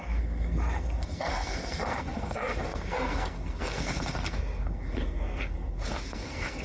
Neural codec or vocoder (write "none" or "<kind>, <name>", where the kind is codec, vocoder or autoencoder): codec, SNAC